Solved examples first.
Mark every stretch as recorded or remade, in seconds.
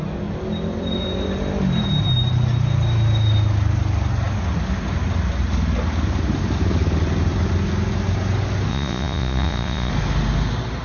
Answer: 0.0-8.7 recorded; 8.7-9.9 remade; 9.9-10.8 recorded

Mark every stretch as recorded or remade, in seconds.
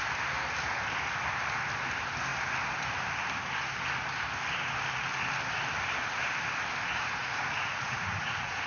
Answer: 0.0-7.2 recorded; 7.2-8.7 remade